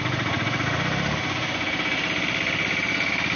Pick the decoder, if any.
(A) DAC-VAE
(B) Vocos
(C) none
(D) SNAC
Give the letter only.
C